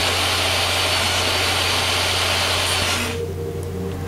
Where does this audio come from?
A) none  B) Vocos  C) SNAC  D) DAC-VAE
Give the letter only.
A